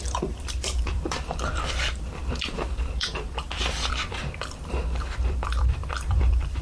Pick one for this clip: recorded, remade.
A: remade